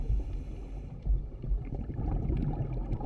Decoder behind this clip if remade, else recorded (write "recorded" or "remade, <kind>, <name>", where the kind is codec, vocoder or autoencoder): remade, vocoder, BigVGAN v2